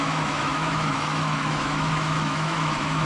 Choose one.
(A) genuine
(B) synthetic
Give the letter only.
B